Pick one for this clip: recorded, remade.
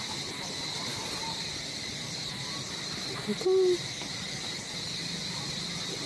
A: recorded